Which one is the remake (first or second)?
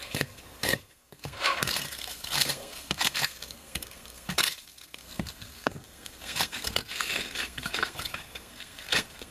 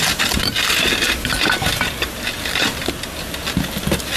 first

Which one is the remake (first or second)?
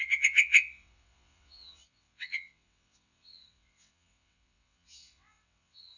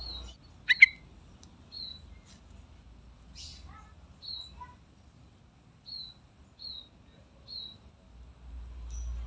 first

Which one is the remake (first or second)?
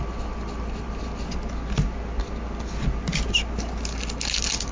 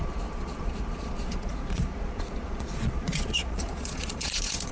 second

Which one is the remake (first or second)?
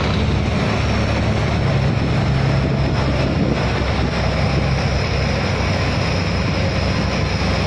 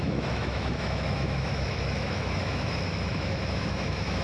second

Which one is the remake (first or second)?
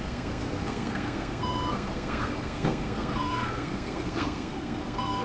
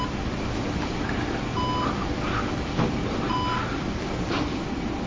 first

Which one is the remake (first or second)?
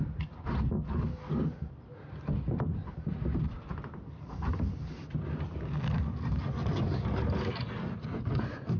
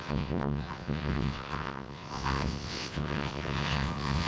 second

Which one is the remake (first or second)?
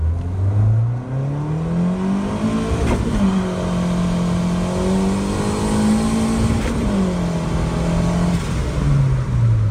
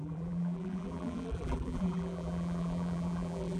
second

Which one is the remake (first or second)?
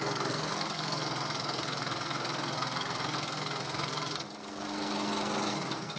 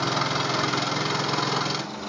first